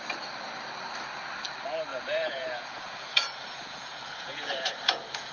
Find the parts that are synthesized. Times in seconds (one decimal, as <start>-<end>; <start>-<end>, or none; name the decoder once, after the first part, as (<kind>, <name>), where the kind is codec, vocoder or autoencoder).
1.9-5.3 (vocoder, Vocos)